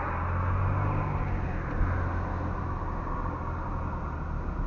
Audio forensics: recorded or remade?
recorded